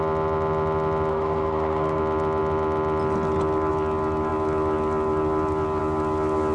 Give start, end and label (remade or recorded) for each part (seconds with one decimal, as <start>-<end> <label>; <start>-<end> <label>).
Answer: 0.0-1.1 recorded; 1.1-2.0 remade; 2.0-6.5 recorded